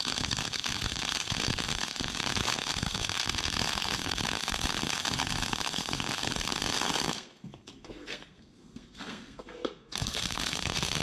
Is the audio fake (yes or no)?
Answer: yes